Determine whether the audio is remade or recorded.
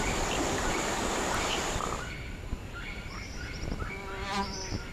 recorded